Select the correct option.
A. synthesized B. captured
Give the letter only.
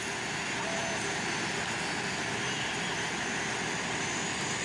B